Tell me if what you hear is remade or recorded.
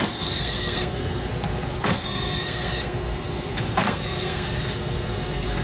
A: remade